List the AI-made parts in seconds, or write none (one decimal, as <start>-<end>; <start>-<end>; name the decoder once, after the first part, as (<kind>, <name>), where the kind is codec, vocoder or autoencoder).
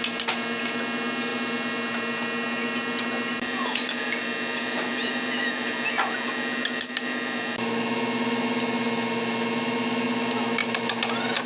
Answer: none